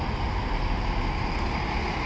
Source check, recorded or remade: recorded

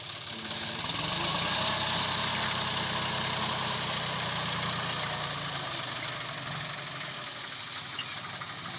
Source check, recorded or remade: recorded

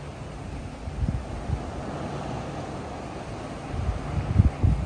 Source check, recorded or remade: recorded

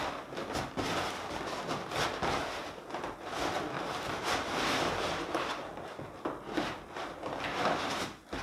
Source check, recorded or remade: recorded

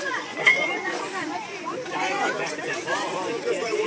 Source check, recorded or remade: remade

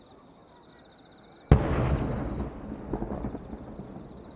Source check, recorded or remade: recorded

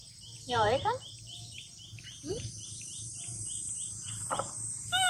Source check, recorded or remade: remade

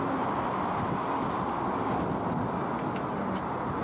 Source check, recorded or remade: recorded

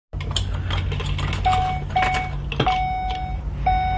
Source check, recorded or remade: recorded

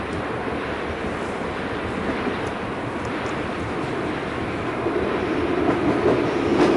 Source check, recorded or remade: recorded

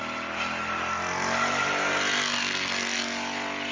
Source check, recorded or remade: recorded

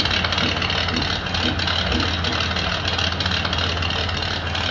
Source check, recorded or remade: recorded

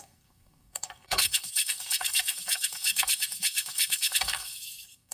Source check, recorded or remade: remade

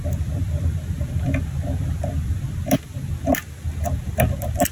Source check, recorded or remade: recorded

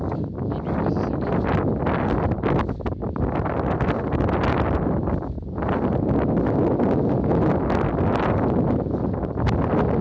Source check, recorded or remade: recorded